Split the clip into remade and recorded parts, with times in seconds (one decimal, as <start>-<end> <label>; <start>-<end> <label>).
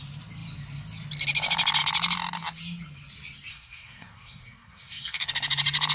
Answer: 0.0-3.5 recorded; 3.5-5.3 remade; 5.3-5.9 recorded